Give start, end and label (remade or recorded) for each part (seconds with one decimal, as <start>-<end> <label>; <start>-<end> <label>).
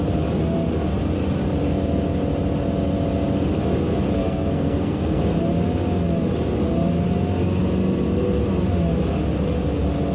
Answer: 0.0-4.2 recorded; 4.2-5.4 remade; 5.4-10.1 recorded